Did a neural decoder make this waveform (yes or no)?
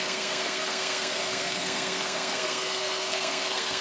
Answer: yes